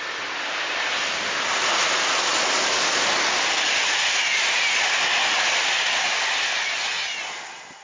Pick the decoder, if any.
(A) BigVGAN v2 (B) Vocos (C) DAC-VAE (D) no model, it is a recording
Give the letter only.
D